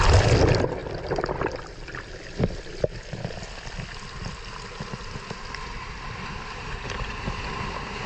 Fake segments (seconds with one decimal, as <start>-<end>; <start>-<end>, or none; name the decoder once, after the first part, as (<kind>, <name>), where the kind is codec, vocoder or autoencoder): 0.0-0.8 (vocoder, BigVGAN v2); 2.4-8.1